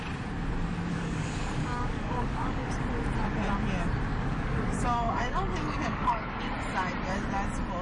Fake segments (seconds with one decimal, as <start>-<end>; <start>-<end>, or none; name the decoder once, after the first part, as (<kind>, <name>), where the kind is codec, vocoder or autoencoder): 0.9-2.7 (codec, DAC); 4.1-6.4